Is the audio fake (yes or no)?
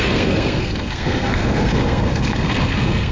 yes